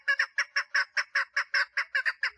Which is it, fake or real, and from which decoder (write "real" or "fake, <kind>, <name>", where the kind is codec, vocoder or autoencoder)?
real